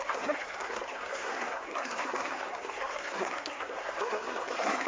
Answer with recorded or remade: remade